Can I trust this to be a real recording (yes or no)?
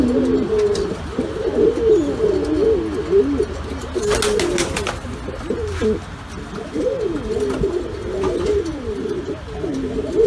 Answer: yes